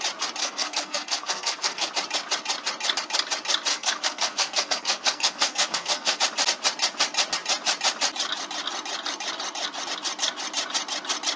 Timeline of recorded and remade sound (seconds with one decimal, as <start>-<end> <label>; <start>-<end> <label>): 0.0-0.4 recorded; 0.4-1.9 remade; 1.9-3.7 recorded; 3.7-6.2 remade; 6.2-11.4 recorded

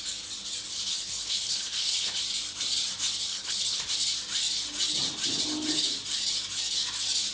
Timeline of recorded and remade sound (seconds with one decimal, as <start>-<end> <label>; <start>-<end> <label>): 0.0-0.9 recorded; 0.9-2.2 remade; 2.2-3.3 recorded; 3.3-3.9 remade; 3.9-7.3 recorded